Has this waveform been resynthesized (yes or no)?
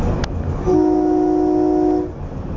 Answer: no